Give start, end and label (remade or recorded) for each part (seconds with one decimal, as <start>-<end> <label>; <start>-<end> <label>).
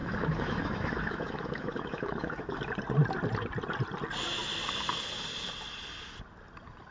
0.0-2.7 remade; 2.7-6.9 recorded